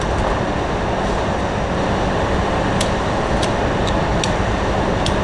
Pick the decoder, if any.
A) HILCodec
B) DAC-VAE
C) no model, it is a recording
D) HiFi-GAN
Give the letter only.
C